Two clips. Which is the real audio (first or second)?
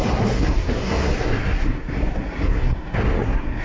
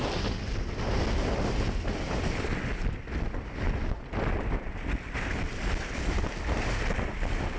second